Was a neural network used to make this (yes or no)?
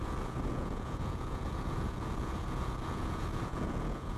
yes